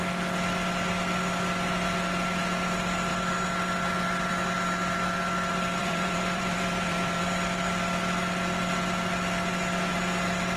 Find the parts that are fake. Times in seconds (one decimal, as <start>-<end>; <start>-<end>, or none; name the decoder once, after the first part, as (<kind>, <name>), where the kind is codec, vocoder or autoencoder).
5.8-7.2 (vocoder, BigVGAN v2)